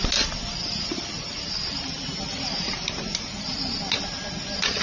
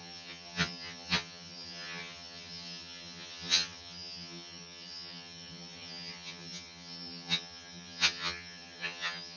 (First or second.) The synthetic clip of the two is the second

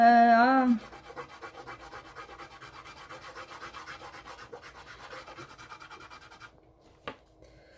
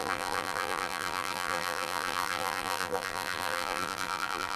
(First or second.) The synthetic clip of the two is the second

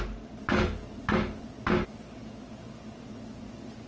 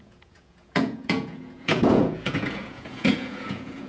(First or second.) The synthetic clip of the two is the second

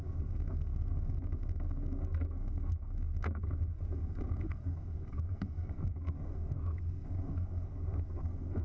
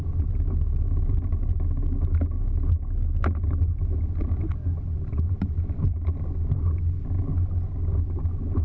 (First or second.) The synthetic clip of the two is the first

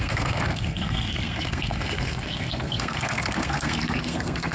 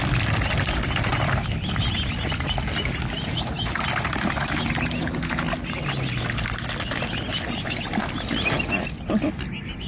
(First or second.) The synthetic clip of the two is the first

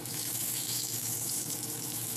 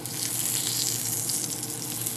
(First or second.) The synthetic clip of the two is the first